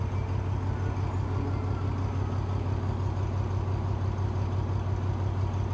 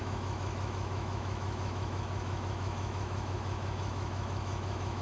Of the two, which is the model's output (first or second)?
second